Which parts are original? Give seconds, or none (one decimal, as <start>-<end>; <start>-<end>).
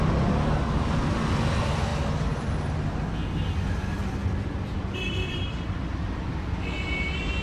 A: 0.0-7.4